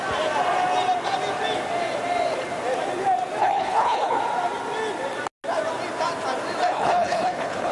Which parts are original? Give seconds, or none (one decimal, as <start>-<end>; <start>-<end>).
0.0-3.4; 4.2-6.7